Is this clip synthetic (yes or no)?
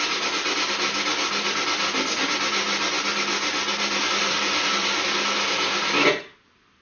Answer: no